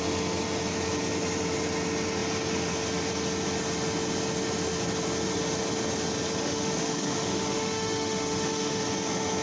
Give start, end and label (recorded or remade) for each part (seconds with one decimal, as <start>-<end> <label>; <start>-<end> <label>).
0.0-6.4 recorded; 6.4-8.8 remade; 8.8-9.4 recorded